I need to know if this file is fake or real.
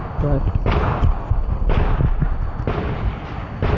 real